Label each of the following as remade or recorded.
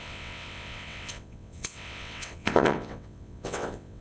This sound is remade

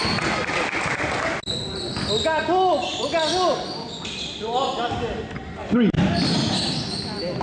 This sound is recorded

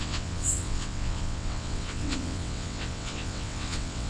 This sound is remade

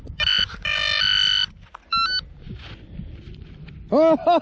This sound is recorded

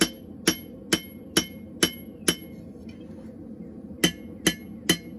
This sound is recorded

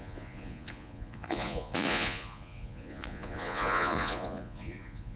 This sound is remade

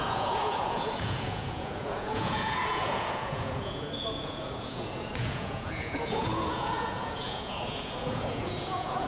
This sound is remade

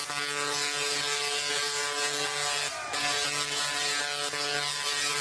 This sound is recorded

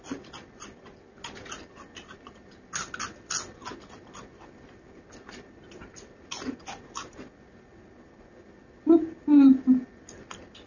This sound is recorded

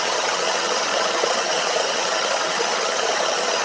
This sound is remade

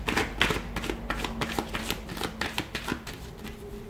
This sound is recorded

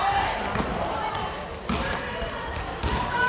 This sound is recorded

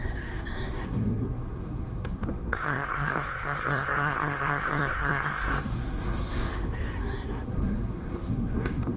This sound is remade